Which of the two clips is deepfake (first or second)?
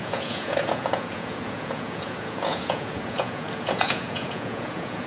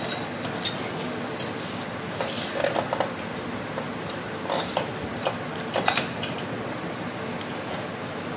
first